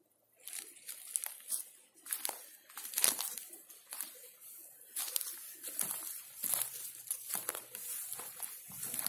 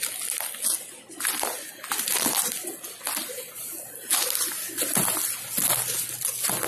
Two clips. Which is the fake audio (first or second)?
first